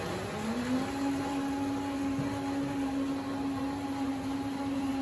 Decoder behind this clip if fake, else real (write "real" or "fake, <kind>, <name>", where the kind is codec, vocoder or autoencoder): real